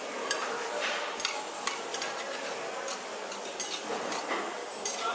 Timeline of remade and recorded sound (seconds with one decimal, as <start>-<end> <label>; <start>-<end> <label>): 0.0-5.1 recorded

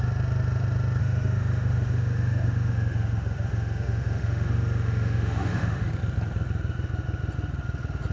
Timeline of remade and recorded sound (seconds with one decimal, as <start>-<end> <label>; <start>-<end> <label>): 0.0-1.0 recorded; 1.0-5.9 remade; 5.9-8.1 recorded